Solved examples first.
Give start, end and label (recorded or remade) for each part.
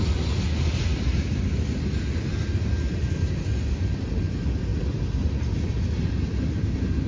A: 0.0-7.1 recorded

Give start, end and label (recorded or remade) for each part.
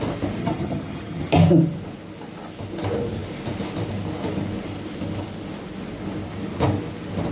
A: 0.0-0.4 recorded; 0.4-1.3 remade; 1.3-7.3 recorded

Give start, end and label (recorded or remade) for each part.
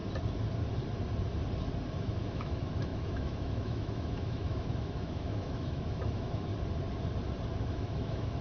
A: 0.0-2.0 recorded; 2.0-6.5 remade; 6.5-7.6 recorded; 7.6-8.4 remade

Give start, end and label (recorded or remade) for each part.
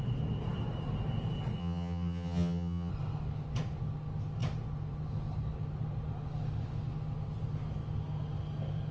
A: 0.0-1.6 recorded; 1.6-2.9 remade; 2.9-8.9 recorded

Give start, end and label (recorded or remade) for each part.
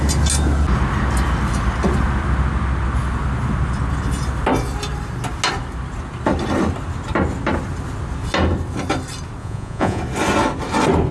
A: 0.0-9.4 recorded; 9.4-10.0 remade; 10.0-11.1 recorded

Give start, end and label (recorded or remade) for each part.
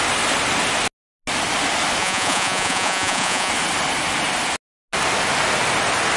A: 0.0-2.0 recorded; 2.0-3.5 remade; 3.5-6.2 recorded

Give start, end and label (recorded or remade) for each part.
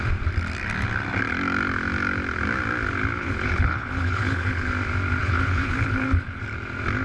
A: 0.0-3.2 recorded; 3.2-4.7 remade; 4.7-5.2 recorded; 5.2-6.4 remade; 6.4-7.0 recorded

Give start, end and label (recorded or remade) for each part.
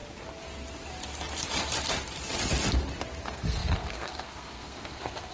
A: 0.0-3.2 recorded; 3.2-5.3 remade